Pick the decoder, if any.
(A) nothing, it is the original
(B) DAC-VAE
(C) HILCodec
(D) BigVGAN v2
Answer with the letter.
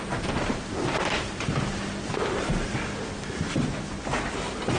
D